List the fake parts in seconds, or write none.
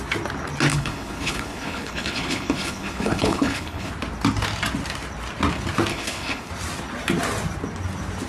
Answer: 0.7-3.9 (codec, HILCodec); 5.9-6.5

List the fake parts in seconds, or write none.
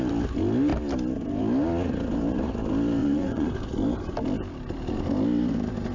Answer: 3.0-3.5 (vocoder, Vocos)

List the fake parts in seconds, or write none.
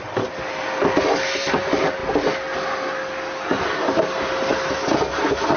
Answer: none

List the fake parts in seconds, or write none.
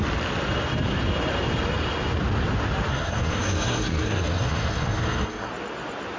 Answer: 2.9-5.5 (codec, SNAC)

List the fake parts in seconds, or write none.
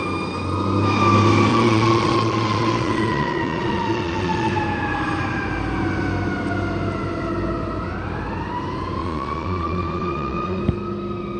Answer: 1.5-4.5 (vocoder, Vocos); 9.0-10.6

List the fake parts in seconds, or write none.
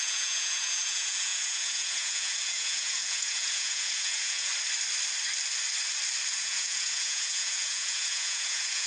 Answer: 0.0-4.5 (vocoder, Vocos); 6.3-8.9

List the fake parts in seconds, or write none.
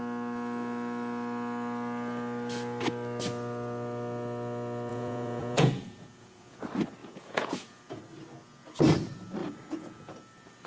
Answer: 4.9-6.6 (vocoder, Vocos); 7.0-8.0; 9.4-10.1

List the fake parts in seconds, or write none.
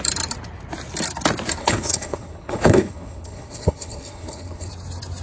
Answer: 1.6-4.7 (codec, HILCodec)